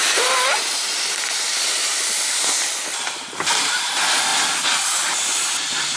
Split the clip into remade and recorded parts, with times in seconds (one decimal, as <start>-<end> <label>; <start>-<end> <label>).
0.0-6.0 recorded